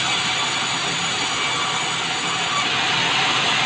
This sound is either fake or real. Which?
real